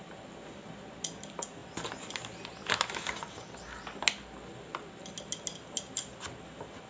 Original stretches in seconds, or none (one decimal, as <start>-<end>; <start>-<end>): 0.0-6.9